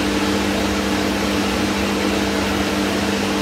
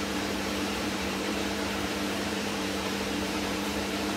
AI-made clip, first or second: second